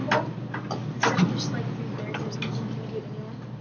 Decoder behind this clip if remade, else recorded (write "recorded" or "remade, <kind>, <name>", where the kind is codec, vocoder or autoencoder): recorded